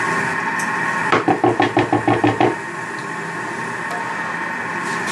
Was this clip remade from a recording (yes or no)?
no